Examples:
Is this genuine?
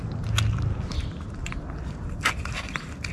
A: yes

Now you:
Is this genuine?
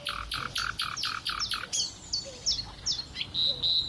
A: yes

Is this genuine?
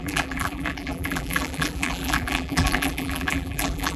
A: no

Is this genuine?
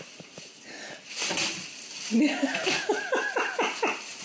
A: yes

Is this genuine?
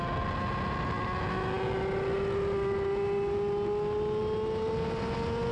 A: yes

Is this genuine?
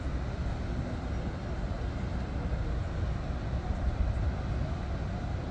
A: yes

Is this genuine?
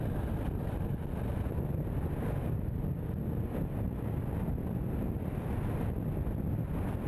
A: yes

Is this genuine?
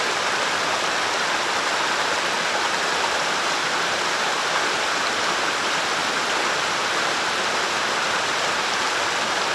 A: yes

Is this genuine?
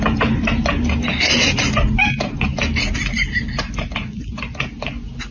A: yes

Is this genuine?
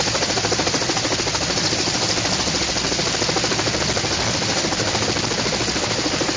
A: yes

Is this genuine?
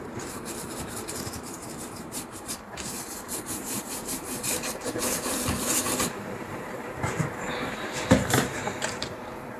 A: no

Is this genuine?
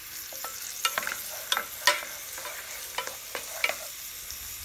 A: yes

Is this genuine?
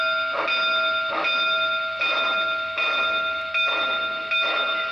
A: yes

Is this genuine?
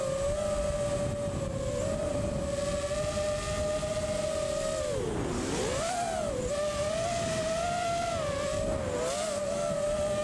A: yes